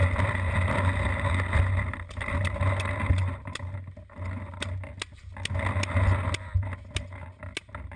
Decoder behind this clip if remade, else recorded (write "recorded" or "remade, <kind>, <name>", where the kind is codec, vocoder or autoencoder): recorded